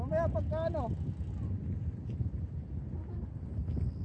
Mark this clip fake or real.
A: real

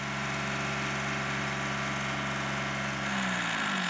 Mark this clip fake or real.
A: real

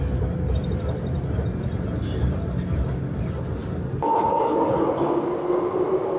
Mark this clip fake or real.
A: real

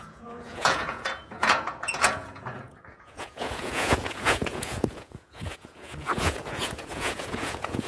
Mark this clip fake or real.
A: fake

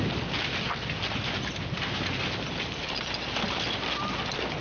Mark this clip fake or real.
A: real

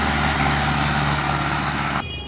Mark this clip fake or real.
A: real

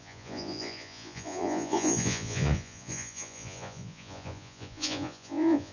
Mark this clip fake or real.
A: fake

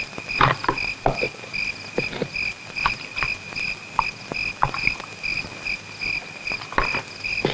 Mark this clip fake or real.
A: real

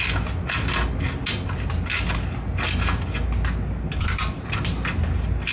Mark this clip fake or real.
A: real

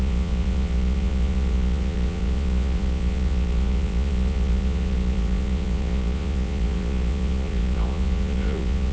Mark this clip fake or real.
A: fake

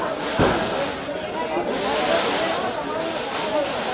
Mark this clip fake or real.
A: real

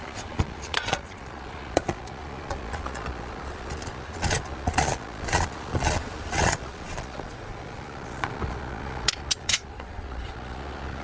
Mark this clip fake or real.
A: fake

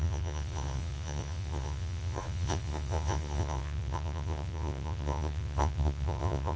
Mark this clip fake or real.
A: fake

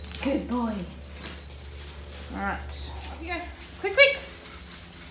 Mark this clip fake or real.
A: real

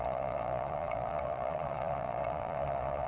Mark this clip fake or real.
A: fake